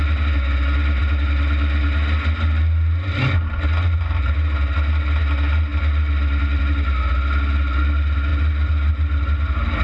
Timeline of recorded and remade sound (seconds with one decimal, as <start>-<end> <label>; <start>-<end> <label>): 0.0-9.8 recorded